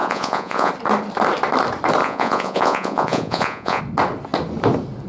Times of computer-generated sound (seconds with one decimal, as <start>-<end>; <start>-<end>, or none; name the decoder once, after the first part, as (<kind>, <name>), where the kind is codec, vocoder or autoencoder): 0.0-0.7 (vocoder, Vocos); 2.0-3.8